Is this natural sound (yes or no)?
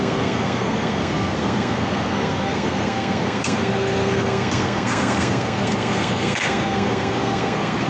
no